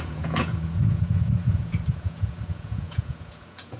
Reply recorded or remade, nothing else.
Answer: remade